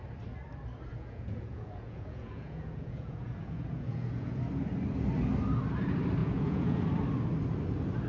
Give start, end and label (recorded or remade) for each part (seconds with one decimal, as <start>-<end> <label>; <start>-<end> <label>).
0.0-0.9 recorded; 0.9-4.4 remade; 4.4-6.2 recorded; 6.2-6.8 remade; 6.8-8.1 recorded